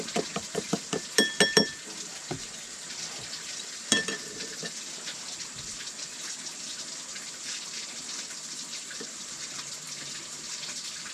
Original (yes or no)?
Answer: no